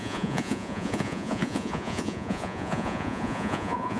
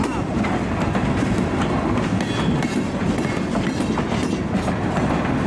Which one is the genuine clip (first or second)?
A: second